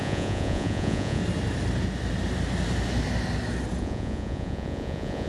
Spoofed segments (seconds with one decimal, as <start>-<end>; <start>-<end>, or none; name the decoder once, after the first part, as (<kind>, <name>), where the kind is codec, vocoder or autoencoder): 0.0-1.2 (vocoder, Vocos); 3.8-5.3